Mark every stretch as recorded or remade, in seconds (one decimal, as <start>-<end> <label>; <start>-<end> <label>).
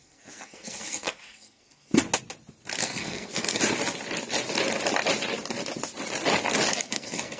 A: 0.0-2.0 remade; 2.0-2.8 recorded; 2.8-3.6 remade; 3.6-6.7 recorded; 6.7-7.4 remade